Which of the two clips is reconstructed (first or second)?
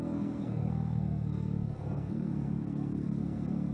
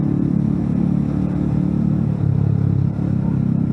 first